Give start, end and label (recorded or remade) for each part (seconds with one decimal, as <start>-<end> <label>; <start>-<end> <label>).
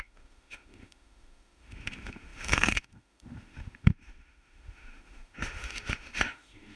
0.0-6.8 remade